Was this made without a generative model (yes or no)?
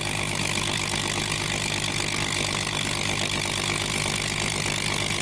yes